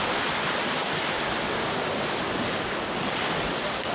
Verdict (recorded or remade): recorded